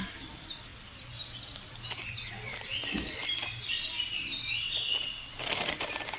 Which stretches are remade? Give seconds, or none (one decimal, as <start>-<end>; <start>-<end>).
0.7-2.3; 3.2-6.2